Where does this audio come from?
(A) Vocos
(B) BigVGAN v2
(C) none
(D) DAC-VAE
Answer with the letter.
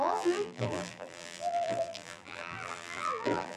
B